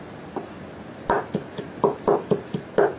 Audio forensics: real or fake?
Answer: real